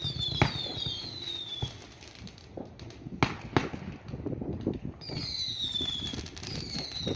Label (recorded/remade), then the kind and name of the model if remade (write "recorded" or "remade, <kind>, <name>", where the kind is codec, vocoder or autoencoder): recorded